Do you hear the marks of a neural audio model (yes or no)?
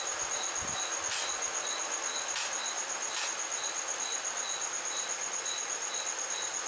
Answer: no